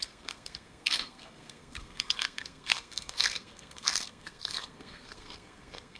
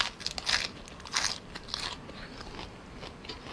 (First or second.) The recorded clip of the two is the second